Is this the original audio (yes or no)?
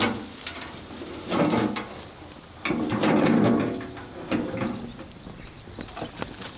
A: yes